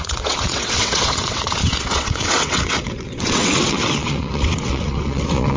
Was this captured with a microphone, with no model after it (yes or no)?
no